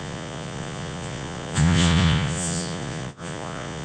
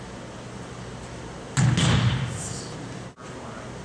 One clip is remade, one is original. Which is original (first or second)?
second